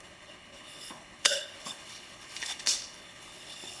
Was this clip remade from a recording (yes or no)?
yes